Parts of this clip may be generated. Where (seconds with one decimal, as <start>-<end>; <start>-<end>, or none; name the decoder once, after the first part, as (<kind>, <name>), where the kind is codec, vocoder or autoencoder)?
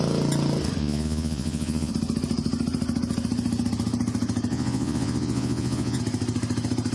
0.8-1.9 (vocoder, Vocos); 4.5-6.0